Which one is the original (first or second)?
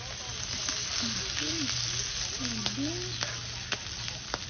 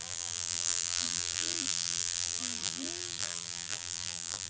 first